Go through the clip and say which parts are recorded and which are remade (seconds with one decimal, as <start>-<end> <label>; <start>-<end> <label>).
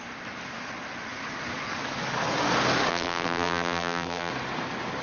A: 0.0-2.9 recorded; 2.9-4.3 remade; 4.3-5.0 recorded